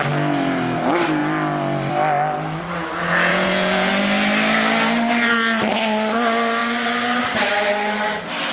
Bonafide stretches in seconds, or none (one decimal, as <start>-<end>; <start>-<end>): 0.0-3.3; 3.9-8.5